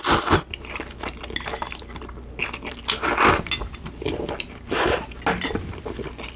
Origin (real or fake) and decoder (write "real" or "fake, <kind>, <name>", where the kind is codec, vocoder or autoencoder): real